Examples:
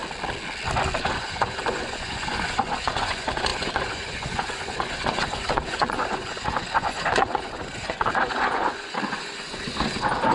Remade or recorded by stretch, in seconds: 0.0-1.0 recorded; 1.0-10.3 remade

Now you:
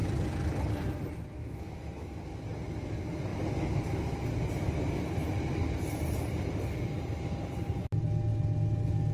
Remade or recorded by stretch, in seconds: 0.0-1.4 recorded; 1.4-2.2 remade; 2.2-9.1 recorded

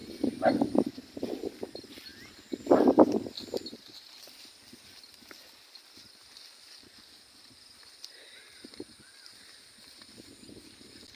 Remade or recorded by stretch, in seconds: 0.0-1.2 remade; 1.2-2.1 recorded; 2.1-3.8 remade; 3.8-11.2 recorded

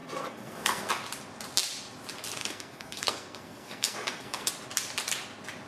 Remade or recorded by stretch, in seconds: 0.0-0.9 remade; 0.9-2.4 recorded; 2.4-4.5 remade; 4.5-5.7 recorded

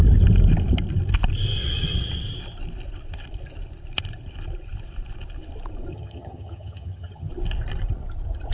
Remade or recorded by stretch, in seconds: 0.0-5.9 recorded; 5.9-7.3 remade; 7.3-8.5 recorded

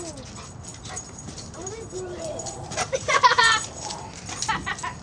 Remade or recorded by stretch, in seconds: 0.0-0.7 recorded; 0.7-3.7 remade; 3.7-5.0 recorded